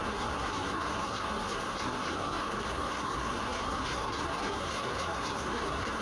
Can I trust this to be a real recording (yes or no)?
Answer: no